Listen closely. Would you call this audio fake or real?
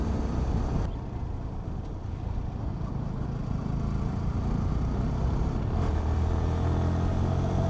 real